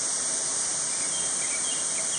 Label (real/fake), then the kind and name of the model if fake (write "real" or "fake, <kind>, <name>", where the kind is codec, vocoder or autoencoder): real